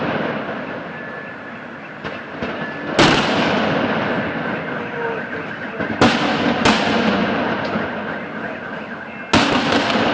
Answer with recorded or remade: recorded